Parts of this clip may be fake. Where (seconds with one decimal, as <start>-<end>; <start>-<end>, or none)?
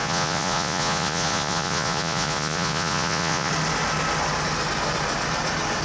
0.0-3.5